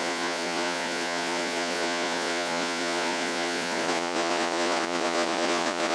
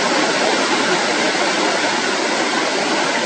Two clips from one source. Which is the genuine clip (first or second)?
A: second